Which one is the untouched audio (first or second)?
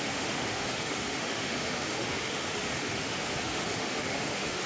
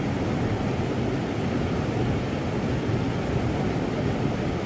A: second